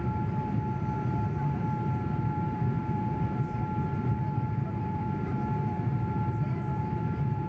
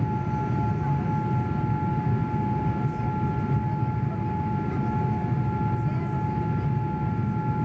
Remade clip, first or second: first